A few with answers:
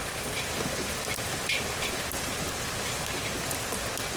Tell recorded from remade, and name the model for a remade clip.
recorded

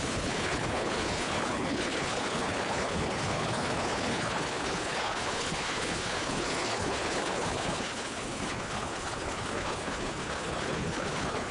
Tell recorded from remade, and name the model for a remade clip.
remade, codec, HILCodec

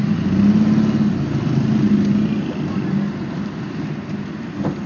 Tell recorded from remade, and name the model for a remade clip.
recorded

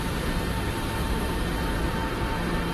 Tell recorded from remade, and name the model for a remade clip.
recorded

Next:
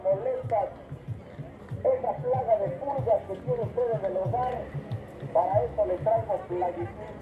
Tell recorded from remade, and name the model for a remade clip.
recorded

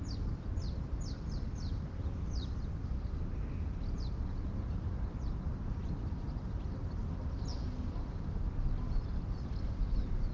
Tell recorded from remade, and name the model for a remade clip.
recorded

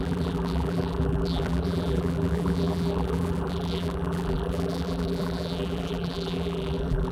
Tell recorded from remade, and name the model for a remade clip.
remade, vocoder, BigVGAN v2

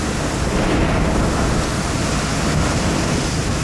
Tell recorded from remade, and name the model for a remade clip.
recorded